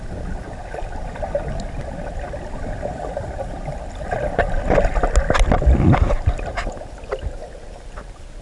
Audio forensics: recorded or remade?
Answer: recorded